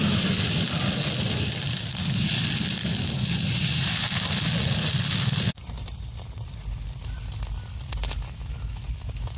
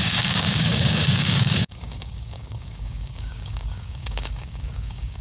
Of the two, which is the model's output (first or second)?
second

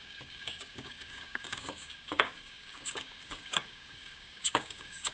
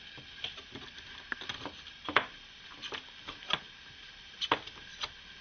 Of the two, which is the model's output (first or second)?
first